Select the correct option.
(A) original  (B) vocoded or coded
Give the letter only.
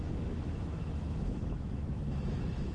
B